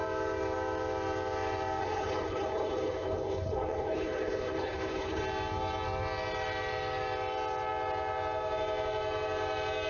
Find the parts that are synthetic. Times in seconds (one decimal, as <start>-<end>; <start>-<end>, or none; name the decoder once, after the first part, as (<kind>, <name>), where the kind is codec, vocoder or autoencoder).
1.8-5.2 (codec, HILCodec)